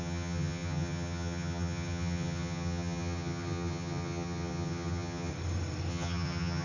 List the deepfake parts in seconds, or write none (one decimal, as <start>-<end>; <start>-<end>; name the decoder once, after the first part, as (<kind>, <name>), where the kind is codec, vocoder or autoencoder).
0.0-5.3 (vocoder, HiFi-GAN); 5.9-6.6